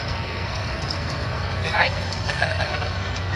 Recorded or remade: remade